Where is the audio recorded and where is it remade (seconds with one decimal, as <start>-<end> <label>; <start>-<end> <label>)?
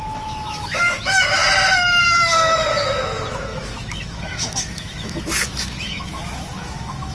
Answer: 0.0-1.4 remade; 1.4-2.0 recorded; 2.0-7.1 remade